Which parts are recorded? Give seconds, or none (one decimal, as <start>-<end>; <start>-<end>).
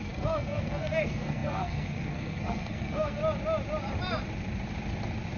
3.2-5.4